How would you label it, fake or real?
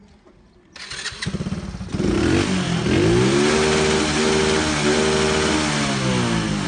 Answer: real